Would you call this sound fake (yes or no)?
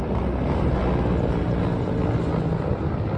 no